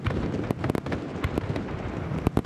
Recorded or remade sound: recorded